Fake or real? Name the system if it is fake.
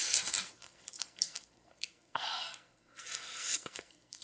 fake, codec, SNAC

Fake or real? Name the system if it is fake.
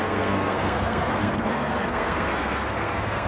fake, codec, SNAC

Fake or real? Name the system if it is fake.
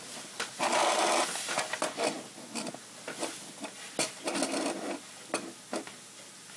real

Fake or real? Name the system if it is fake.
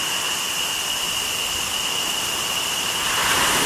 real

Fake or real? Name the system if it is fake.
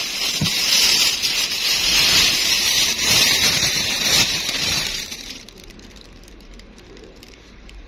fake, vocoder, BigVGAN v2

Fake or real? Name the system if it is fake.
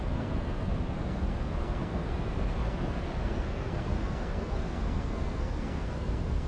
fake, codec, SNAC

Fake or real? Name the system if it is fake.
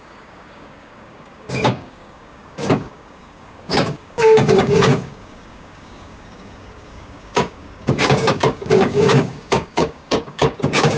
fake, codec, DAC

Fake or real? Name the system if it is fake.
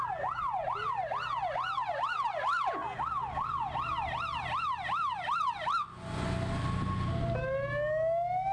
real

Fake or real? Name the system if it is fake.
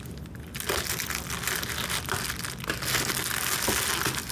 real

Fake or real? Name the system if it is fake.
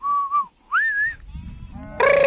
real